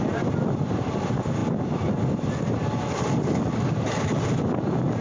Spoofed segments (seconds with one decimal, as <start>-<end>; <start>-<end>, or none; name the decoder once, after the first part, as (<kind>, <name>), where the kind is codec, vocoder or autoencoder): none